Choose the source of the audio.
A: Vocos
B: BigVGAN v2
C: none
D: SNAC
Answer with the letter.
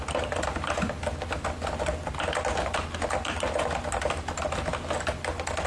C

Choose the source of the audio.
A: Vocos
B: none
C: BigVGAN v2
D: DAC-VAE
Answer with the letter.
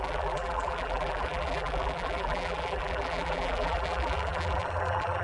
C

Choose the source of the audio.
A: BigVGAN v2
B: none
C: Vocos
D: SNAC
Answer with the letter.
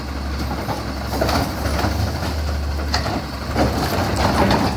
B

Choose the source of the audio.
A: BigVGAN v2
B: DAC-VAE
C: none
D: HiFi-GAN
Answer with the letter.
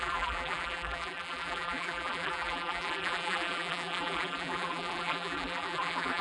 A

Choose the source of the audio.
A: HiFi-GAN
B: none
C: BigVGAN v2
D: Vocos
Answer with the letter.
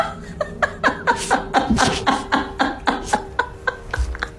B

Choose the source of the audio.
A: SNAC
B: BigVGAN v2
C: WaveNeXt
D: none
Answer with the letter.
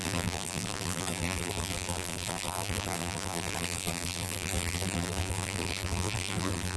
B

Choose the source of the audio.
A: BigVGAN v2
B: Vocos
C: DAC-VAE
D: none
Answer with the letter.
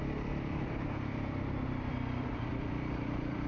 A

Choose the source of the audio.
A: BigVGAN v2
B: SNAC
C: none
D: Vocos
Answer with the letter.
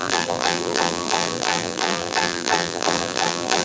A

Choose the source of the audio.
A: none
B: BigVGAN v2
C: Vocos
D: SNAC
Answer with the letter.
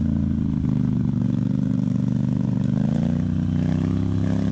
B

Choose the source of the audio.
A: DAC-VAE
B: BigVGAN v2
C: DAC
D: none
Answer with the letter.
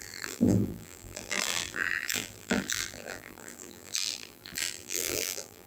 B